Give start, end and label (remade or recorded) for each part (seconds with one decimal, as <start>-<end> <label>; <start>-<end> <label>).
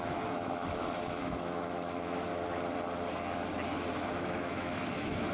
0.0-2.3 remade; 2.3-4.1 recorded; 4.1-5.3 remade